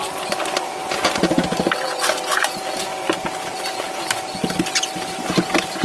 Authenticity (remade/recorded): recorded